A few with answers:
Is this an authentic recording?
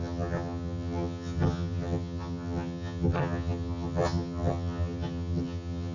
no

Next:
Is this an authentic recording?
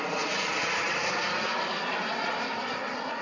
yes